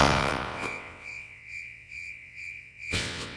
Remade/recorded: remade